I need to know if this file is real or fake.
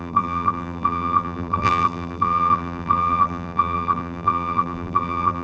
fake